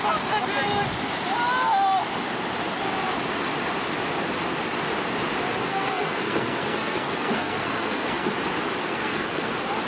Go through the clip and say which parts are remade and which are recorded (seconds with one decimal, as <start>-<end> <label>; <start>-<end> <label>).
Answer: 0.0-5.7 recorded; 5.7-8.3 remade; 8.3-8.8 recorded; 8.8-9.5 remade; 9.5-9.9 recorded